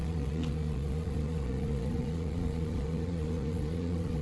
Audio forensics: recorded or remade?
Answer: remade